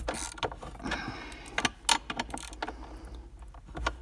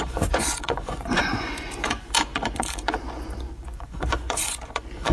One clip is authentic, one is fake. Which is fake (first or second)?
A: second